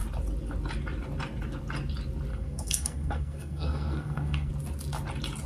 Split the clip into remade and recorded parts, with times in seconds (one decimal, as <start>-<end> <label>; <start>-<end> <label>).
0.0-2.3 recorded; 2.3-4.5 remade; 4.5-5.5 recorded